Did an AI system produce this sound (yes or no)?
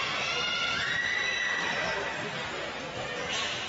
no